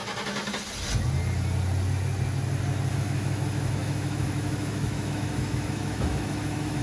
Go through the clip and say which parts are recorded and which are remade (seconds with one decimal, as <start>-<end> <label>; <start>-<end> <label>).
0.0-2.9 recorded; 2.9-6.8 remade